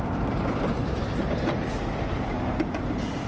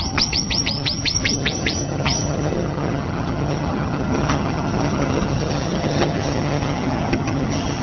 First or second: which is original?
first